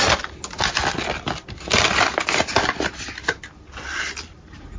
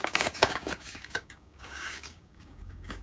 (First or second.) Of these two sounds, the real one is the first